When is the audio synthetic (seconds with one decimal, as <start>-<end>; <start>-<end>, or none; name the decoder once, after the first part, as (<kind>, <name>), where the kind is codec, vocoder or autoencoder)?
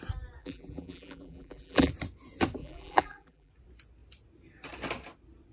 0.4-1.9 (vocoder, BigVGAN v2); 2.6-3.5